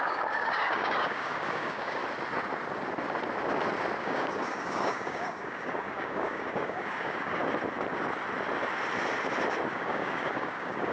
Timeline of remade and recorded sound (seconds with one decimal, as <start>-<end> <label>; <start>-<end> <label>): 0.0-2.0 remade; 2.0-4.0 recorded; 4.0-7.4 remade; 7.4-9.7 recorded; 9.7-10.9 remade